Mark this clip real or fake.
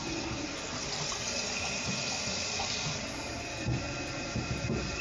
real